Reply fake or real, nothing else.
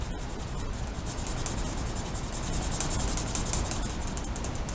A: real